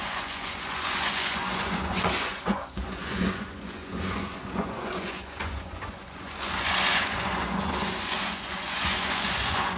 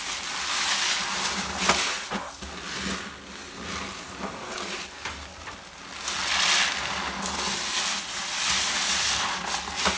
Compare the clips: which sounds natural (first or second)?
second